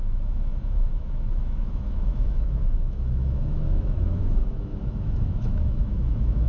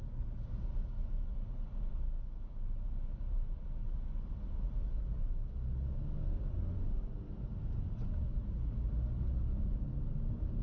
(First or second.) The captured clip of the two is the second